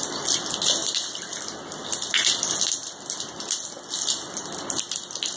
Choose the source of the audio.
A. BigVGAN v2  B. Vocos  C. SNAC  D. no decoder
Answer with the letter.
D